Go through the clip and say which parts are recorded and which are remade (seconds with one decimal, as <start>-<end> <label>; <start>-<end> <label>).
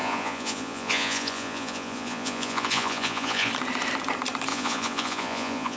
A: 0.0-3.5 remade; 3.5-4.5 recorded; 4.5-5.8 remade